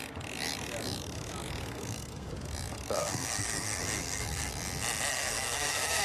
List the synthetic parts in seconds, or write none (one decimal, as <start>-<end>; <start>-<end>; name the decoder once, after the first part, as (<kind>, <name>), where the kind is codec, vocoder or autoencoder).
1.6-2.3 (codec, SNAC); 3.0-4.5; 5.1-6.0